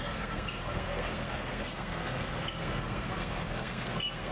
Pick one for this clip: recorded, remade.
remade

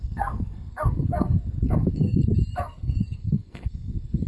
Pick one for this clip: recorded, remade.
remade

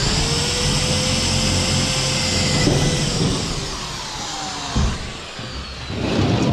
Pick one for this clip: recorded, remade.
recorded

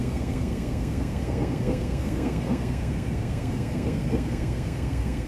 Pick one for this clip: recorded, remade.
remade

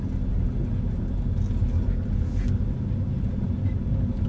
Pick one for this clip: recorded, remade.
recorded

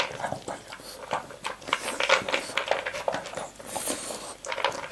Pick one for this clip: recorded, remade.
recorded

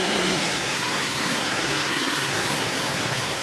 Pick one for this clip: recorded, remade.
remade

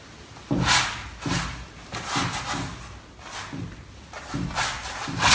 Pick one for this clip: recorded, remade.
recorded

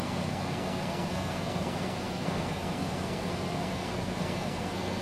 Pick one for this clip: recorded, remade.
remade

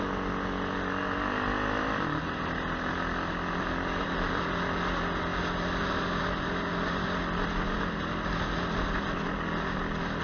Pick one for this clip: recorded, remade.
recorded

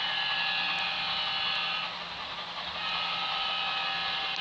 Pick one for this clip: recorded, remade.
recorded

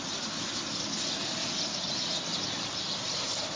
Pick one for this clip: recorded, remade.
recorded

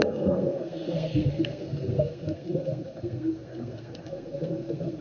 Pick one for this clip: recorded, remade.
remade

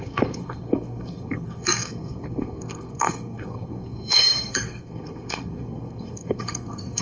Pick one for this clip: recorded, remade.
remade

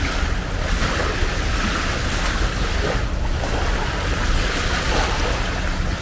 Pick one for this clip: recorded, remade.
recorded